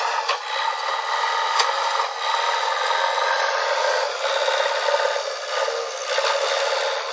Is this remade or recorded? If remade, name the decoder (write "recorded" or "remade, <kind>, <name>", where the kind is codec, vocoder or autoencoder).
recorded